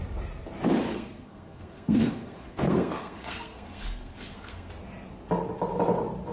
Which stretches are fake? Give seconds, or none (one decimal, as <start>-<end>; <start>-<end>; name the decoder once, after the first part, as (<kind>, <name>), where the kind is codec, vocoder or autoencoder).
0.9-4.7 (codec, SNAC)

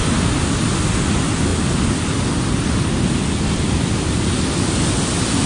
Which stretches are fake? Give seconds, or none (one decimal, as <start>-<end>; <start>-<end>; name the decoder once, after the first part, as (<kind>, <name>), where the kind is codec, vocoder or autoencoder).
none